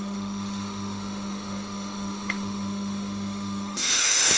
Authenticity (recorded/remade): remade